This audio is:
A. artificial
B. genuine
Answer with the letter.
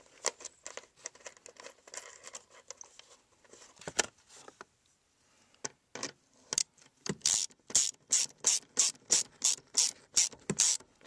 B